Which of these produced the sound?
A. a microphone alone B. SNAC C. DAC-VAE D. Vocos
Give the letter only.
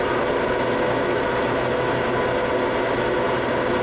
A